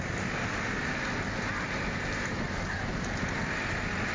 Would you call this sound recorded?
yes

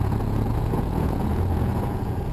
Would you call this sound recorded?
no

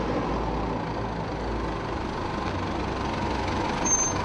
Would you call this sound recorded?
yes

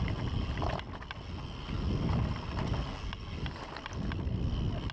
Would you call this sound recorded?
yes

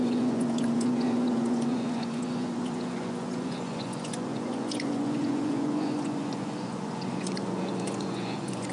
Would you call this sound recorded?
no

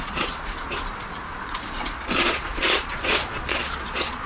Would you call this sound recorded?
no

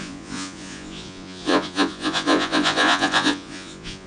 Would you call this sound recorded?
no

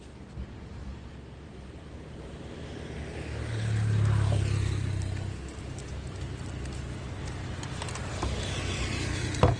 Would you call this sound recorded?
yes